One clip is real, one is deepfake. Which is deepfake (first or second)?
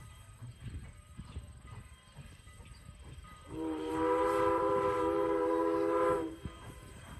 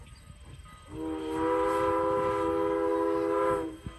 first